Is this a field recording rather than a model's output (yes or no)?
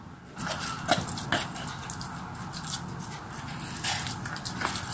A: yes